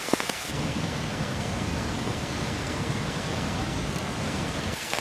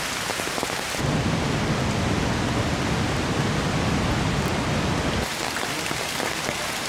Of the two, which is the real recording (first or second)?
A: second